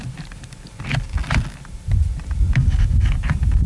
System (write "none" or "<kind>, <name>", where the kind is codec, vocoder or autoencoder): none